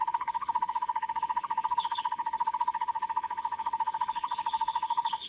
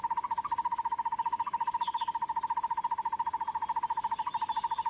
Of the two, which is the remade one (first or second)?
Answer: first